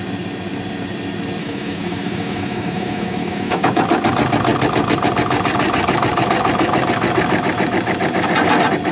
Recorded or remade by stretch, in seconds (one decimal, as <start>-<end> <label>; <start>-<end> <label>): 0.0-1.4 recorded; 1.4-3.7 remade; 3.7-8.9 recorded